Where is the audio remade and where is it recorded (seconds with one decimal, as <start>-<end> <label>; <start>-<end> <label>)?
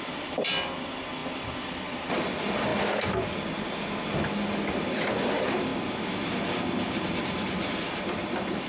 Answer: 0.0-2.7 remade; 2.7-4.7 recorded; 4.7-5.7 remade; 5.7-8.1 recorded; 8.1-8.7 remade